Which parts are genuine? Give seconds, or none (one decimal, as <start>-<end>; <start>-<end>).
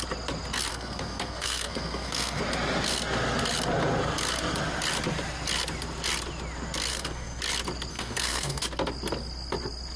0.0-0.7; 2.4-6.9; 7.4-7.9; 8.6-10.0